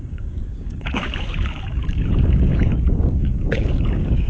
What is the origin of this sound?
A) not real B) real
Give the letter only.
A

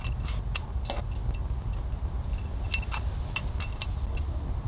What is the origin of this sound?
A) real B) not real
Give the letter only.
A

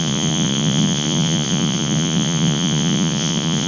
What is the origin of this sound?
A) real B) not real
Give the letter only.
B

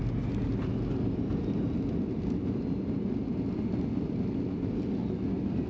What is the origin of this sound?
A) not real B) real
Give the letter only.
B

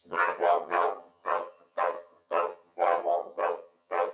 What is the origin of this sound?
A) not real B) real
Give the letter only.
A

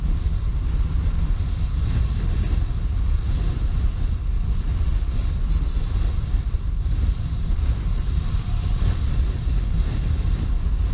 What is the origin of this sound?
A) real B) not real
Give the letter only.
A